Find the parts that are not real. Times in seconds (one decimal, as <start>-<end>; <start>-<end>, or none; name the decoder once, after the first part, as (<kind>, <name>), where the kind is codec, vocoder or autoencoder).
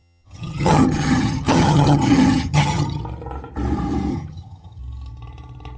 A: 0.0-3.0 (vocoder, HiFi-GAN); 4.1-4.8